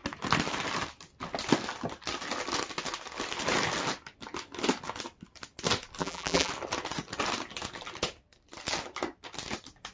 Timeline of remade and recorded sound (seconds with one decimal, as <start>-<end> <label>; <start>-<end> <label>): 0.0-6.0 recorded; 6.0-6.5 remade; 6.5-9.9 recorded